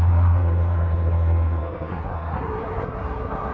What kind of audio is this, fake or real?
fake